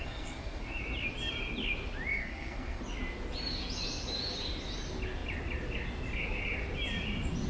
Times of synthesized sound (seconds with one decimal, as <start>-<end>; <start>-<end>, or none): 0.0-0.8; 2.1-2.8

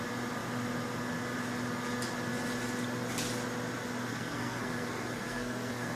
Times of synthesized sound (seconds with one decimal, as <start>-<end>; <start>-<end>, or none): 4.1-6.0